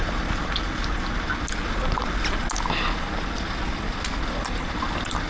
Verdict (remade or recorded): recorded